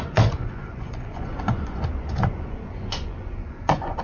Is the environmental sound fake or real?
fake